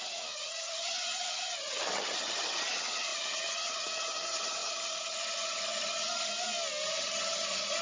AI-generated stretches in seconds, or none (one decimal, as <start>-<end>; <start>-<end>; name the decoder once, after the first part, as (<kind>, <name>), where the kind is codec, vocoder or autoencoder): 0.0-6.3 (vocoder, HiFi-GAN); 7.0-7.8